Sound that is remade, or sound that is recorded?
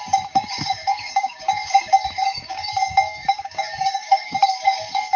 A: remade